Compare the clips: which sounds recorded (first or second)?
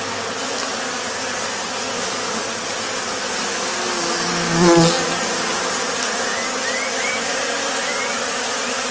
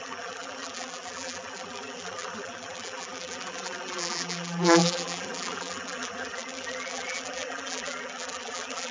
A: first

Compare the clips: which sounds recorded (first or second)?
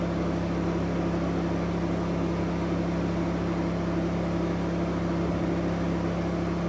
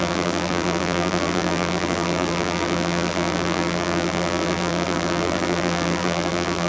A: first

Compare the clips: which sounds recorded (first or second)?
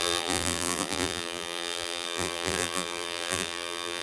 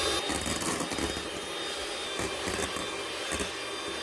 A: second